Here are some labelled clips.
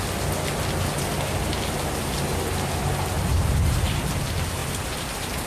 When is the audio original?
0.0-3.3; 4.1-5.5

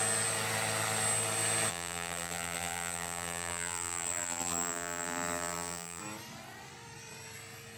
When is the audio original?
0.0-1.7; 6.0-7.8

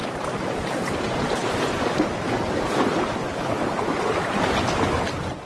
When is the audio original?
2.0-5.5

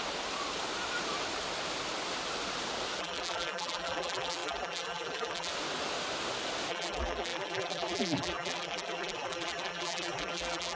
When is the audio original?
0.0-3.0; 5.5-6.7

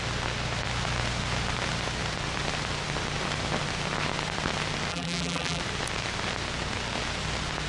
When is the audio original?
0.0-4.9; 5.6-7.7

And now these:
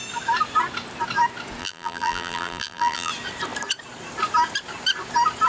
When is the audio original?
0.0-1.6; 3.1-5.5